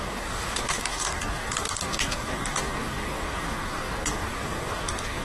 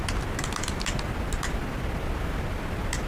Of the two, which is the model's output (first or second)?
first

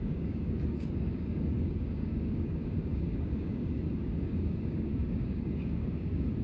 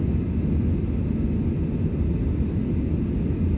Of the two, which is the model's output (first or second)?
first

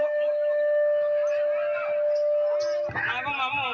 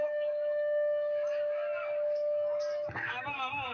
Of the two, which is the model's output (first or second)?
second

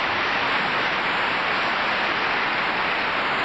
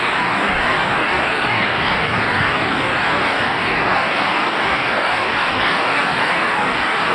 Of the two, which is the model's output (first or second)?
second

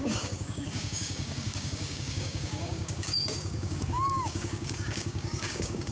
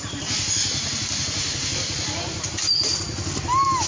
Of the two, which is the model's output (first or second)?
first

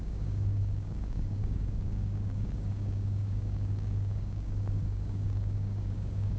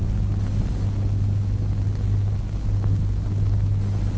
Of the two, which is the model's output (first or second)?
first